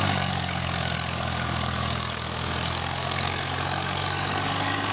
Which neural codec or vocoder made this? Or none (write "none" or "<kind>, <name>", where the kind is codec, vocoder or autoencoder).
codec, DAC